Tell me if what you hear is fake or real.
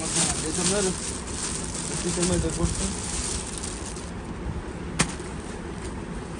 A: real